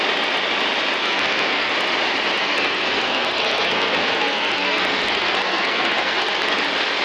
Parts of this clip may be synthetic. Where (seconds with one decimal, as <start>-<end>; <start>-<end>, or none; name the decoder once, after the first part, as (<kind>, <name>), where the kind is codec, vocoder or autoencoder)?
1.0-1.7 (codec, SNAC); 2.4-6.6